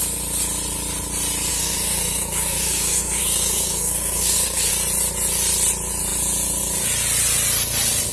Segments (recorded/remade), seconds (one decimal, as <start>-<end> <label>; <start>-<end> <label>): 0.0-1.5 recorded; 1.5-4.7 remade; 4.7-8.1 recorded